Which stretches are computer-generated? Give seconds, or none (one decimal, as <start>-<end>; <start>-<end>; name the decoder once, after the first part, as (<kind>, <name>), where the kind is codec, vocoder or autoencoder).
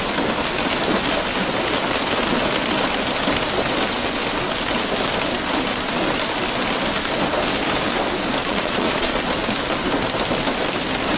8.4-9.2 (vocoder, Vocos)